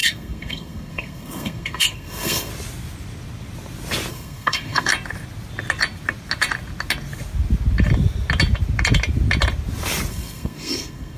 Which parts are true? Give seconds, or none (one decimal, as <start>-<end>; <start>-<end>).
2.5-4.1; 4.9-10.1